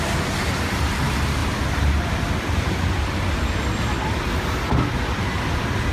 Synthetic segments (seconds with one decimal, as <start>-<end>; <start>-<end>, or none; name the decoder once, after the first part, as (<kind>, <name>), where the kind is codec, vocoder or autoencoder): none